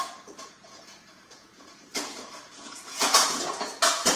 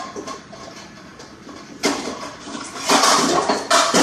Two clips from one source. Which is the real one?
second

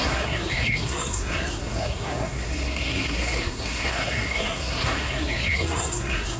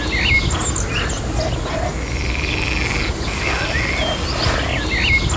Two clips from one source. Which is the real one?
second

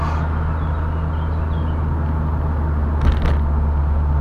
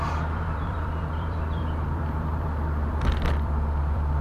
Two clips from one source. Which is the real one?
first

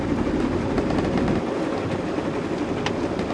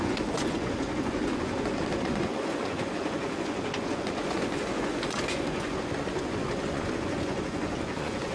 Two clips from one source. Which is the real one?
first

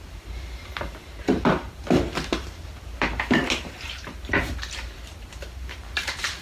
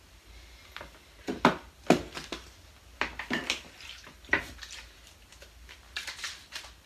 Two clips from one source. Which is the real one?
second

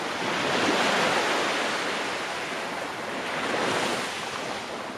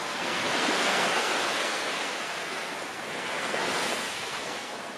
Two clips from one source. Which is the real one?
first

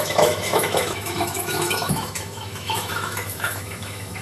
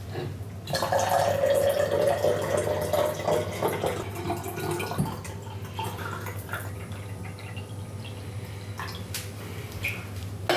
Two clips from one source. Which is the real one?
second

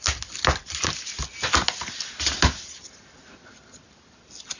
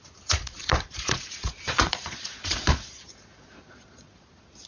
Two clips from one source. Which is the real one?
first